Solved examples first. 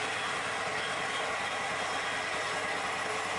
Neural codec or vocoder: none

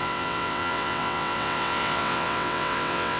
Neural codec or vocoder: vocoder, WaveNeXt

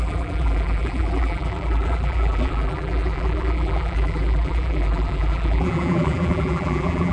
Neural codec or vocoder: vocoder, BigVGAN v2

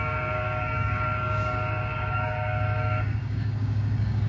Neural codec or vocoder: codec, DAC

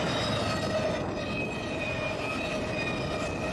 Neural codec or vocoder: none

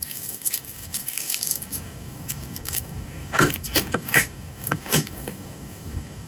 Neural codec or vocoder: codec, DAC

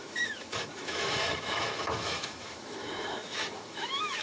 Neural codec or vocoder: autoencoder, DAC-VAE